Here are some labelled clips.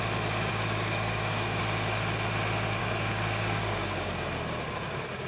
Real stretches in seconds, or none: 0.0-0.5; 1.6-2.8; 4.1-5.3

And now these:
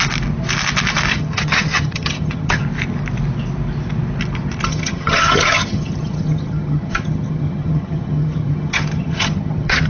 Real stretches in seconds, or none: 0.0-1.1; 2.6-4.7

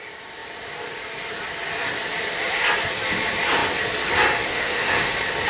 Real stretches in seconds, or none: 0.0-4.5; 5.1-5.5

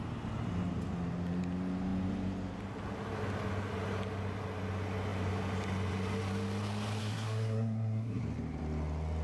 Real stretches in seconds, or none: 0.0-7.0; 8.2-9.2